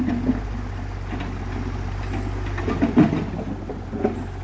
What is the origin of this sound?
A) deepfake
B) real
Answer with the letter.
B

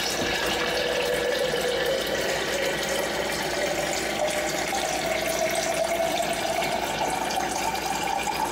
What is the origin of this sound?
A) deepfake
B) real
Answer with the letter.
B